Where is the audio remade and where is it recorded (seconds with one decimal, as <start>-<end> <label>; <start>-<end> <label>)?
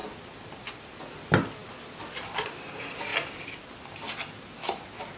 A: 0.0-1.0 remade; 1.0-1.6 recorded; 1.6-2.6 remade; 2.6-5.2 recorded